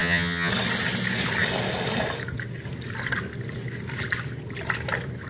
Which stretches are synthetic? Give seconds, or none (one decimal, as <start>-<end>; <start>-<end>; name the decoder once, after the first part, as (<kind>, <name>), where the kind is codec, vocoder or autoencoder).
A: 0.0-0.5 (vocoder, HiFi-GAN)